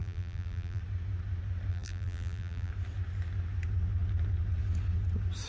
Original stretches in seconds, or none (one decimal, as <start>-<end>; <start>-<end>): 0.8-1.7; 2.7-5.5

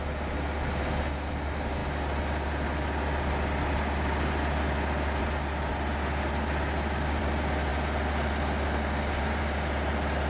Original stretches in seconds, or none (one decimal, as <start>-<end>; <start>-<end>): 0.0-10.3

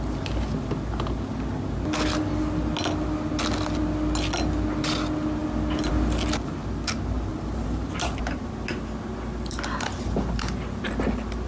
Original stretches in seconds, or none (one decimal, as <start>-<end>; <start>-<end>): 0.0-7.3; 8.5-11.5

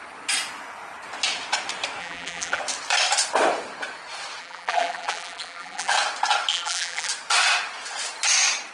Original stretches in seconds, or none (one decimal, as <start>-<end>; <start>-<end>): 0.0-2.0; 2.6-4.4; 5.9-6.5; 7.1-8.7